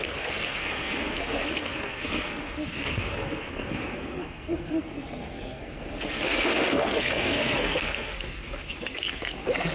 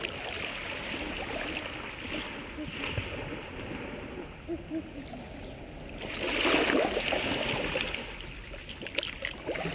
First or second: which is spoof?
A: first